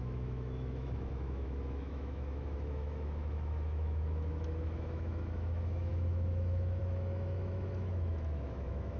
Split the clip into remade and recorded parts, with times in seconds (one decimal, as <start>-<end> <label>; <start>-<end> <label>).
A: 0.0-9.0 remade